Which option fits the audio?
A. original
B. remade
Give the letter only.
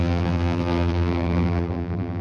B